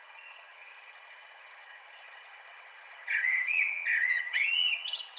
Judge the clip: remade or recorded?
remade